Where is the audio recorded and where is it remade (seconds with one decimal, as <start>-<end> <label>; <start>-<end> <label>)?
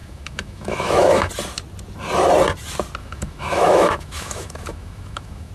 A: 0.0-1.3 remade; 1.3-3.0 recorded; 3.0-5.5 remade